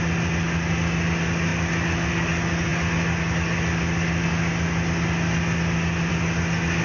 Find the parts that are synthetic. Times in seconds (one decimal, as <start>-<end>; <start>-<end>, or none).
none